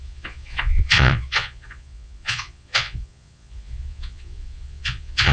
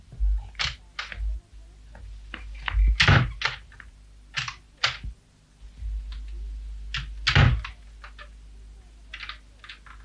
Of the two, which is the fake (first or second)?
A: first